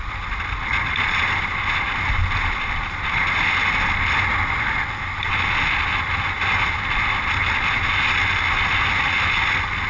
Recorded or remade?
recorded